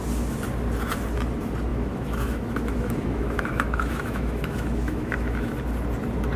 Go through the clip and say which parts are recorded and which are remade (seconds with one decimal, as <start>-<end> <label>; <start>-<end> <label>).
0.0-1.7 recorded; 1.7-5.5 remade; 5.5-6.4 recorded